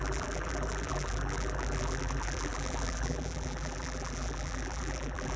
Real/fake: fake